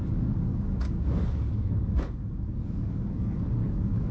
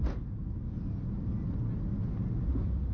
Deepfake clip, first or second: first